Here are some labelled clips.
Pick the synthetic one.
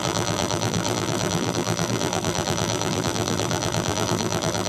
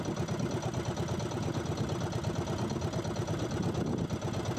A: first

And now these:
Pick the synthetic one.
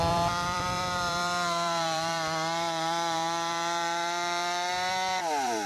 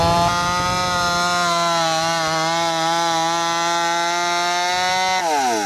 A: first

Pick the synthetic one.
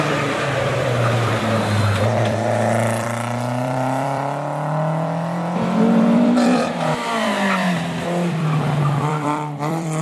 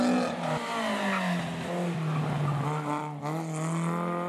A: first